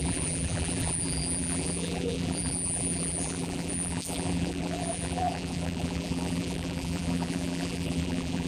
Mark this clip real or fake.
fake